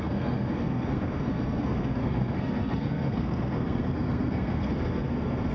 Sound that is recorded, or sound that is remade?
remade